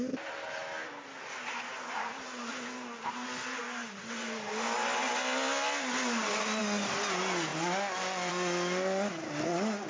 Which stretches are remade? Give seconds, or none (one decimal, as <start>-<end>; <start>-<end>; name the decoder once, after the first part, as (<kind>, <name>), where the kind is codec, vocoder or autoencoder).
none